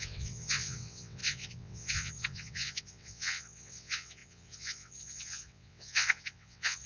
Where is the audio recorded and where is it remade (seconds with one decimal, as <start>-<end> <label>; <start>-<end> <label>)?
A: 0.0-6.9 remade